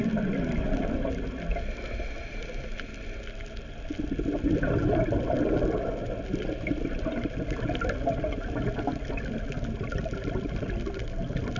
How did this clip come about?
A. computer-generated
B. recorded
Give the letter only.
B